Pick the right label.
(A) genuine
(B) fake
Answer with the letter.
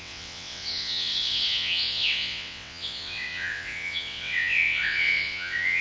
B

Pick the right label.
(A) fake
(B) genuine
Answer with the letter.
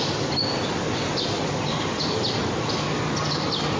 B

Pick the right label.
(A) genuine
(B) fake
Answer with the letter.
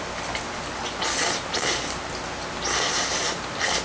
A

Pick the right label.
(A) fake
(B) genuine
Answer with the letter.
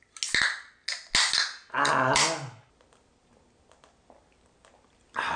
B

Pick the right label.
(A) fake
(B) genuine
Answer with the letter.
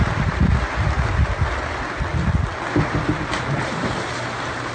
B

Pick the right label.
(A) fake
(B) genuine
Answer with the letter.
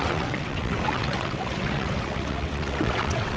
A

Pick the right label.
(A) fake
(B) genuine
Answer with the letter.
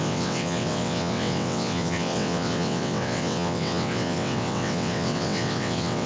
A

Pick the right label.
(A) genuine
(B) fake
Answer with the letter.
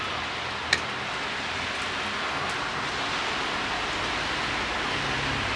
A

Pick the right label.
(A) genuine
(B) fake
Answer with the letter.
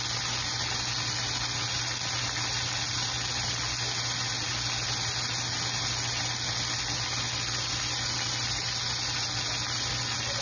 A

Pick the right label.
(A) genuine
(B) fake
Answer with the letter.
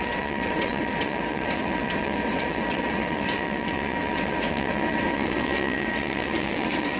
B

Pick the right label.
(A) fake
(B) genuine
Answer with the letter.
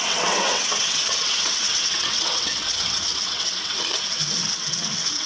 A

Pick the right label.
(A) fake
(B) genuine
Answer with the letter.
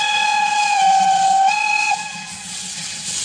A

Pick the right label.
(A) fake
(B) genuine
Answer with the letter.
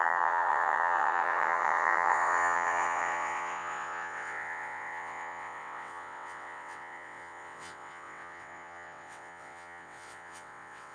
A